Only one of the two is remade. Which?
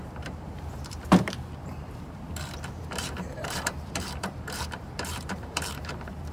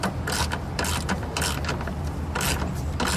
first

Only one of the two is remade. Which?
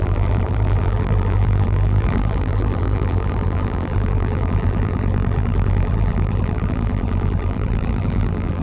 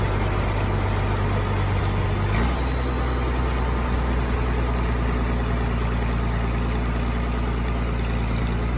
first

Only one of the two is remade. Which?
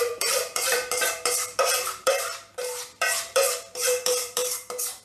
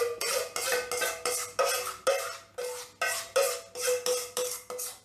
first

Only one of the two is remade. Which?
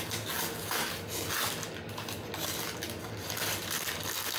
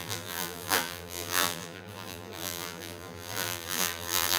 second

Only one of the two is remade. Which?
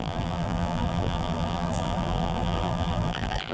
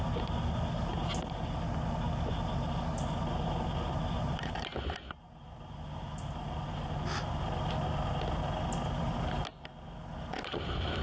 first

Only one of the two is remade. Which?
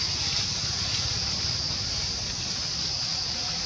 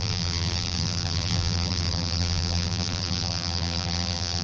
second